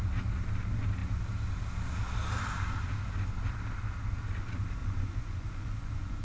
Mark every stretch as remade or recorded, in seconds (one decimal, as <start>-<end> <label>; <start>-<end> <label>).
0.0-4.8 recorded; 4.8-6.2 remade